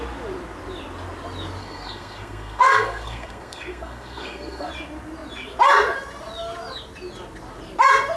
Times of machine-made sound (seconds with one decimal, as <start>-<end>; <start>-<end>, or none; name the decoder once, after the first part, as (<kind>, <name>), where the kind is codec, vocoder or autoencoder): 1.6-4.7 (codec, SNAC)